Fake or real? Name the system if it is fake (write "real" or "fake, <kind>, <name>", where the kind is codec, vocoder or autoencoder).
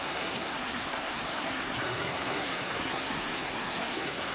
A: fake, codec, SNAC